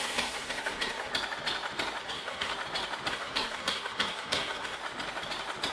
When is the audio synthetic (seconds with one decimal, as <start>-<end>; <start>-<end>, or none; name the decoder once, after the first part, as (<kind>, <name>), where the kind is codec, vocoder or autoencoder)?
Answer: 0.0-1.1 (codec, SNAC); 2.0-2.5; 3.1-4.8